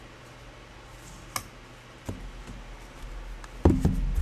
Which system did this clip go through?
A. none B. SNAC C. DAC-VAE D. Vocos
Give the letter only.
A